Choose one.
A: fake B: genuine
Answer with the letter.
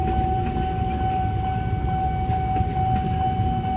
B